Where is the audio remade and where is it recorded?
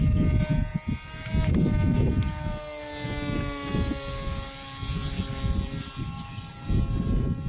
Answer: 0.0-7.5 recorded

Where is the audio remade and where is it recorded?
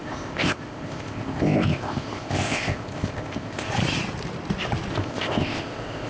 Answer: 0.0-3.7 remade; 3.7-4.9 recorded; 4.9-6.1 remade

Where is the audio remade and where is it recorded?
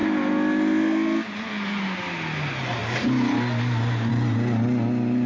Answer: 0.0-5.3 recorded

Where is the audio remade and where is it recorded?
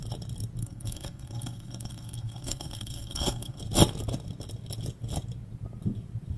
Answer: 0.0-0.6 recorded; 0.6-3.6 remade; 3.6-6.4 recorded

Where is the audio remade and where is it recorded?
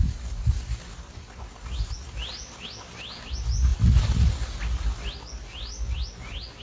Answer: 0.0-6.6 recorded